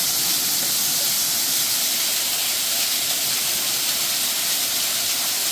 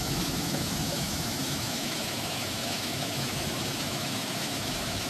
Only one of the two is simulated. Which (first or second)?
second